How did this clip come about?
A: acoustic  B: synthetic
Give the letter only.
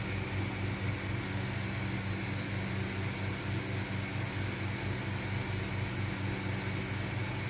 A